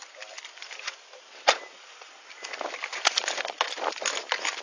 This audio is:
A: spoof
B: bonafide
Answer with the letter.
B